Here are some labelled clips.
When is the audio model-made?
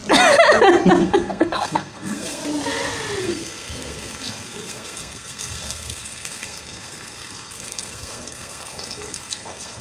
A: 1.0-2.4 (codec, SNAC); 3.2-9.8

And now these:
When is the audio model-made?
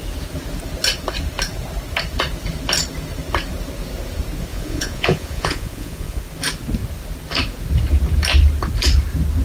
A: 4.5-6.2 (vocoder, Vocos)